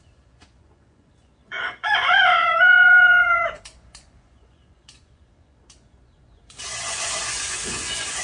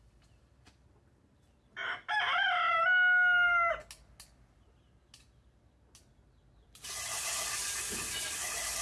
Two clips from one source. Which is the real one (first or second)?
second